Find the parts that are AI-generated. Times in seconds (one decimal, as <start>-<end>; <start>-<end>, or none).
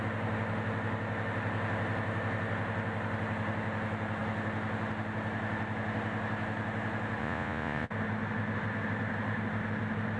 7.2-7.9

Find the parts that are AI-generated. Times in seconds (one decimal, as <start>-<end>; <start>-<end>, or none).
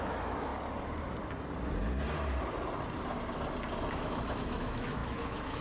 0.0-0.5; 3.9-5.6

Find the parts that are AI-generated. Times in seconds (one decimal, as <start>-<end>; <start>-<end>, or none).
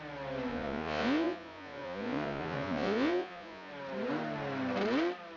0.5-3.7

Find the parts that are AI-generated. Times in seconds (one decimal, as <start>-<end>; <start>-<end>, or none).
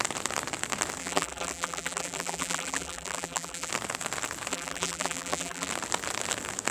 1.0-3.7; 4.5-5.7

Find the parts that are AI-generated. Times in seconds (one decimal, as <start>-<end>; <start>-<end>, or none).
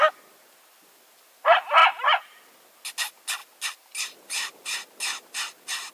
1.8-2.4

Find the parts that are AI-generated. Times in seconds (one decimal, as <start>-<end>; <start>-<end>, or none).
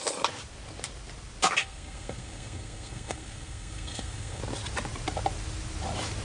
1.6-4.4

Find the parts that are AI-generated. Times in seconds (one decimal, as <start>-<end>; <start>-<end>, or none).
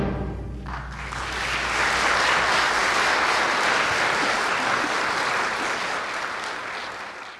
2.8-4.8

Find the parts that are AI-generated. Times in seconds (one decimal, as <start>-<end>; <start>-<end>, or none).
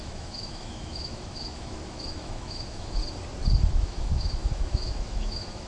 0.0-3.0; 3.7-5.7